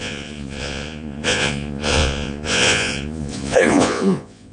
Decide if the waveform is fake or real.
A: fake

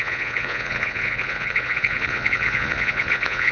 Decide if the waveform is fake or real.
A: fake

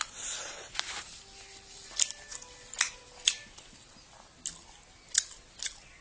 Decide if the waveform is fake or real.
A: real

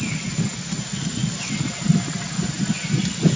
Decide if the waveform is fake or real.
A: real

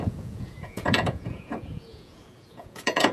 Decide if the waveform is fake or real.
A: fake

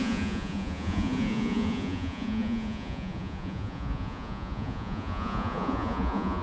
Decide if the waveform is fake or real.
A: fake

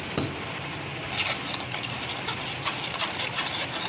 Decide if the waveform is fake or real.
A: real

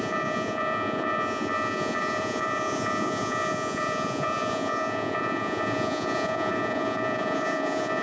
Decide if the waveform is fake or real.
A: fake